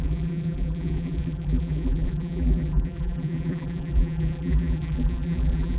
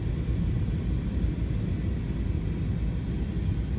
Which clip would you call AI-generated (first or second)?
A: first